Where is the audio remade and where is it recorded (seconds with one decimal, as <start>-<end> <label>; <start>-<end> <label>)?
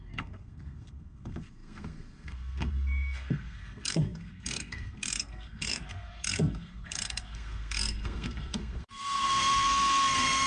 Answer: 0.0-10.5 remade